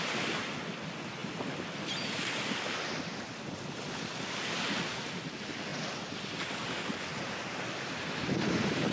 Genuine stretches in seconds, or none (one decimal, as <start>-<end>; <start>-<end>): 0.0-7.1